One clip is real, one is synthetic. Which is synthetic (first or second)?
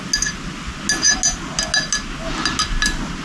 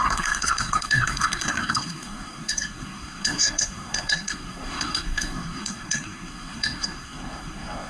second